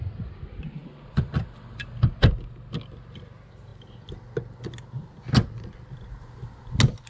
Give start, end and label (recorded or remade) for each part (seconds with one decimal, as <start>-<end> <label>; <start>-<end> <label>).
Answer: 0.0-7.1 recorded